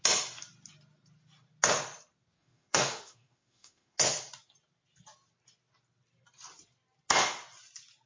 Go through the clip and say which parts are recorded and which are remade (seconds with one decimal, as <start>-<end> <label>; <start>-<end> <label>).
0.0-2.4 recorded; 2.4-4.0 remade; 4.0-8.1 recorded